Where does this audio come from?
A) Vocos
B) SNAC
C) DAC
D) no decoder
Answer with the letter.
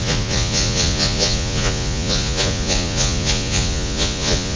A